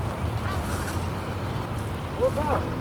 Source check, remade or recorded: recorded